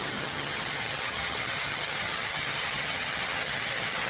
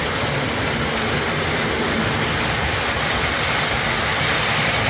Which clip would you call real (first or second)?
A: second